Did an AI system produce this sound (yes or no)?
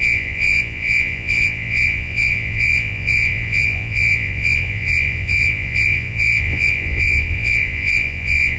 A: yes